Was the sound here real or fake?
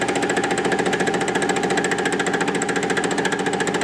real